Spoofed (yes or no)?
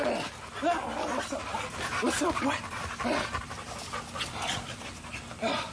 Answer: no